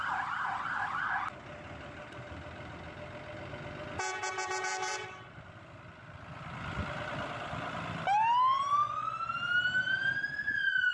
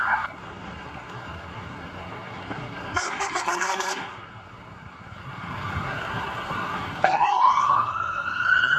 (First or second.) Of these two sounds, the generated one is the second